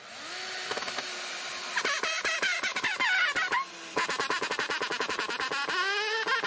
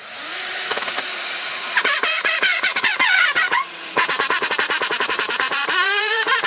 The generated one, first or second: second